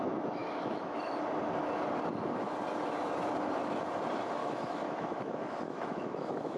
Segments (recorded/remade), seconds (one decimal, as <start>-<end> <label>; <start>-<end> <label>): 0.0-0.4 recorded; 0.4-1.0 remade; 1.0-4.4 recorded; 4.4-6.6 remade